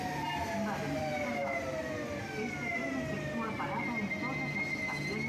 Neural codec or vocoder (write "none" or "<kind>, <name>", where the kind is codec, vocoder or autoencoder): none